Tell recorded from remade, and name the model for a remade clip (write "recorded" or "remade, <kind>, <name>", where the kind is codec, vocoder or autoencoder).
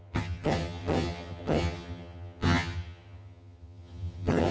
remade, vocoder, HiFi-GAN